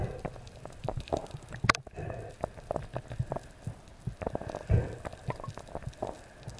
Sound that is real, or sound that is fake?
real